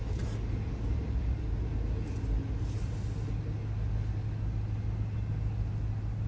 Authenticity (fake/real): real